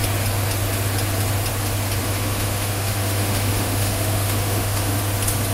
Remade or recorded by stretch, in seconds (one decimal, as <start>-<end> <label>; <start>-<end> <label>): 0.0-2.0 recorded; 2.0-5.0 remade; 5.0-5.5 recorded